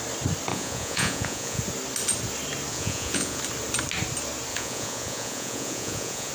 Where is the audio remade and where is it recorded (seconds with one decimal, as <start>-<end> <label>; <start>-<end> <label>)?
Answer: 0.0-0.5 recorded; 0.5-1.6 remade; 1.6-2.7 recorded; 2.7-3.4 remade; 3.4-4.5 recorded; 4.5-6.3 remade